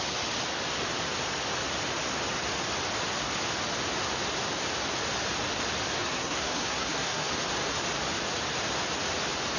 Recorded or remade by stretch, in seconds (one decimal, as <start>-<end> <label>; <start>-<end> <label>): 0.0-6.0 recorded; 6.0-7.3 remade; 7.3-9.6 recorded